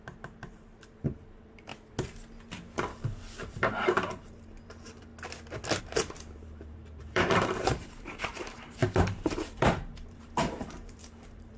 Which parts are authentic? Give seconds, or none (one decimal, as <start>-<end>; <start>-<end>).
1.7-2.8; 5.1-5.8